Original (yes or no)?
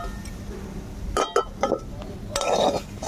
yes